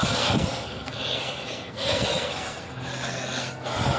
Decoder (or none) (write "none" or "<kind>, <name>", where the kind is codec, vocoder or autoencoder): codec, SNAC